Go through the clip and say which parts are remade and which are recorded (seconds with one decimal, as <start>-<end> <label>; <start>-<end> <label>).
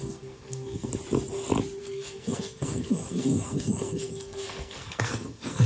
0.0-0.9 remade; 0.9-1.8 recorded; 1.8-5.7 remade